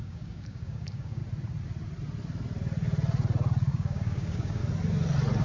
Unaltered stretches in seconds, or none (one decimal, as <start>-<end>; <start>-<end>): 1.2-3.7; 4.6-5.4